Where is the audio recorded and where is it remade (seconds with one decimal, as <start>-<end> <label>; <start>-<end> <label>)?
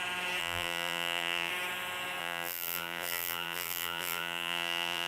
0.0-0.4 recorded; 0.4-1.5 remade; 1.5-2.2 recorded; 2.2-5.1 remade